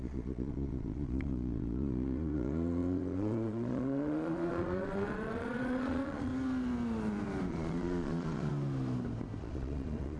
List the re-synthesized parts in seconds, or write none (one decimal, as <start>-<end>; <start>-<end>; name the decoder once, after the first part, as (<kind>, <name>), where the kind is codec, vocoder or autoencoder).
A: 0.0-6.3 (vocoder, Vocos); 7.5-8.5; 9.4-10.2